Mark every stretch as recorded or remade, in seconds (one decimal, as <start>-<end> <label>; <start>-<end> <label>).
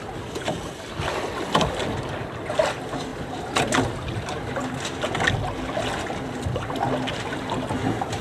0.0-8.2 recorded